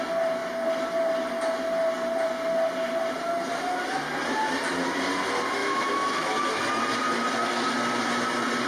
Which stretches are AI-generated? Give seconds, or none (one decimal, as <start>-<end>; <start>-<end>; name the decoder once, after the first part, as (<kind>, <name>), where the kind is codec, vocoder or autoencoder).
5.6-6.6 (autoencoder, DAC-VAE)